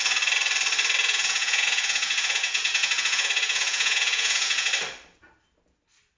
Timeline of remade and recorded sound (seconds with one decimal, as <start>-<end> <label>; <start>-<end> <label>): 0.0-1.0 recorded; 1.0-4.7 remade; 4.7-6.2 recorded